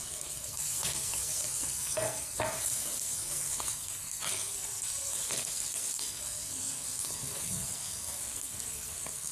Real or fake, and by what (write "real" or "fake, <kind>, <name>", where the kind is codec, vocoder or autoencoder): fake, codec, SNAC